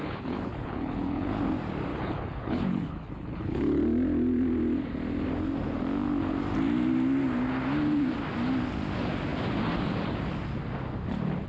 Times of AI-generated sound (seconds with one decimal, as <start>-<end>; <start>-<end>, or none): 0.0-1.4; 1.9-3.8